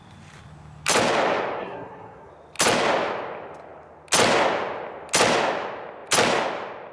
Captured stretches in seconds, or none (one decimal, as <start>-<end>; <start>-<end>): 0.0-1.6; 2.3-6.9